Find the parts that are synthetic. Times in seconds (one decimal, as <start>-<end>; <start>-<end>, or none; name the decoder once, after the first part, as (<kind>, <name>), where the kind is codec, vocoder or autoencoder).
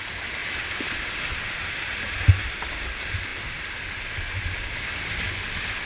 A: none